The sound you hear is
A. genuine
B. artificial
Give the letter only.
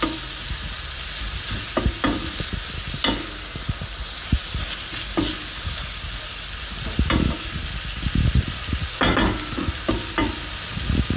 A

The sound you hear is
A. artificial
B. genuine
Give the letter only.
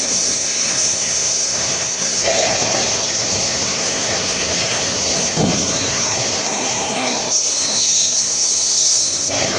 A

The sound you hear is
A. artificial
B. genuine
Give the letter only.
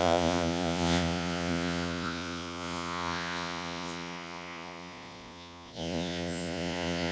A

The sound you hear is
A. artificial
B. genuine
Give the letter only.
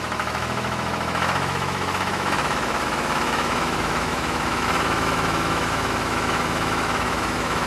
A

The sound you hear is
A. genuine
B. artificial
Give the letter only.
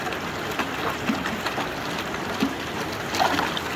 A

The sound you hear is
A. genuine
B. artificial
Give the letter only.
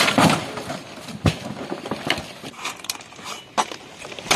A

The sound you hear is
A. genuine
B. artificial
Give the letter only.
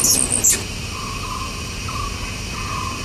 A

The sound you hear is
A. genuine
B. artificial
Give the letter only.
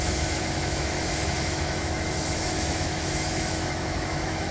B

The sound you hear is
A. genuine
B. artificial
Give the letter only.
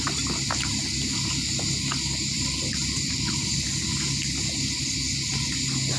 A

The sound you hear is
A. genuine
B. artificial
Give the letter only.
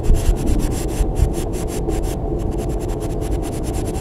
A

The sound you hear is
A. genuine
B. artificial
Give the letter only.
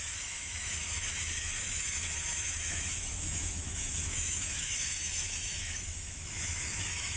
B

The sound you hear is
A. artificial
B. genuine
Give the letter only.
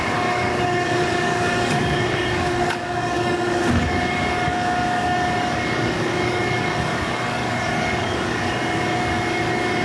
A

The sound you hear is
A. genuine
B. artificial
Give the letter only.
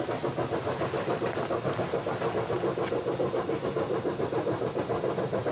A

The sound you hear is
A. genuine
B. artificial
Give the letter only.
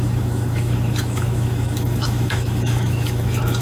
B